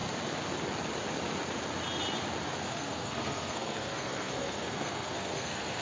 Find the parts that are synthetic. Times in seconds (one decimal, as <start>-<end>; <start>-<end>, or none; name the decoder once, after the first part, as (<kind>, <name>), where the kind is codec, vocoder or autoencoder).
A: 2.7-5.8 (codec, SNAC)